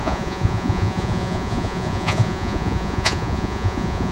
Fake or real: fake